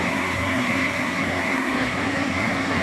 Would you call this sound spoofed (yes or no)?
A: yes